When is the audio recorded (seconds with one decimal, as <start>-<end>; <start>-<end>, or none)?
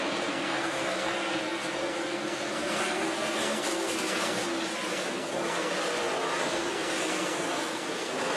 4.4-4.9; 5.7-6.4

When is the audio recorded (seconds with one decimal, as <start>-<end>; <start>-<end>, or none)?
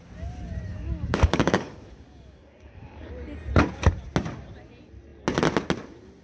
0.0-0.7; 3.1-6.2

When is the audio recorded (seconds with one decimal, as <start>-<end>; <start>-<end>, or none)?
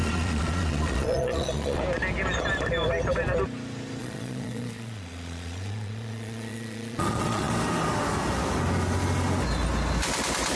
1.8-4.0; 7.5-10.6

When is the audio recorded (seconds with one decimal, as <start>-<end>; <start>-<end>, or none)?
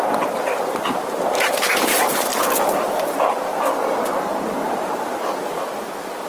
2.3-2.9; 3.5-4.7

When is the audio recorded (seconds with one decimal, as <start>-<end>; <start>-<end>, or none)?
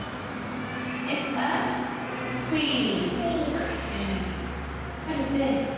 0.0-5.8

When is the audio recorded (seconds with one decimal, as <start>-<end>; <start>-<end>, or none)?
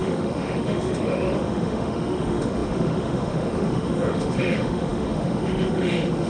none